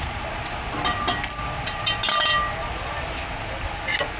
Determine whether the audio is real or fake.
real